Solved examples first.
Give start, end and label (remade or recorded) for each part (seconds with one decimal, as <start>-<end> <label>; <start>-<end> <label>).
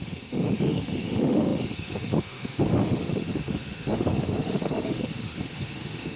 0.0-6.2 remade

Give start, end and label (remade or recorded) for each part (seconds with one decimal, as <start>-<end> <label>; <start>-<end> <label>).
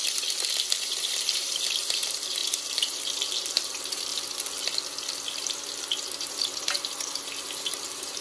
0.0-0.8 recorded; 0.8-4.1 remade; 4.1-6.3 recorded; 6.3-8.2 remade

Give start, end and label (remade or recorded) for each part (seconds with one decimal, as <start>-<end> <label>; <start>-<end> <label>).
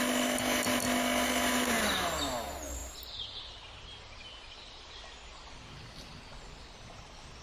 0.0-7.4 recorded